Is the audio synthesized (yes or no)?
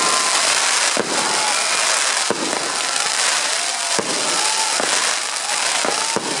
no